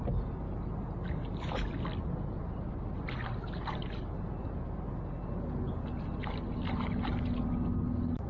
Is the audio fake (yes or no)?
no